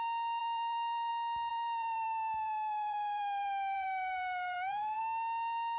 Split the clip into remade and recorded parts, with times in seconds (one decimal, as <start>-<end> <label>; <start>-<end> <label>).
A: 0.0-0.4 recorded; 0.4-1.1 remade; 1.1-1.5 recorded; 1.5-5.0 remade; 5.0-5.8 recorded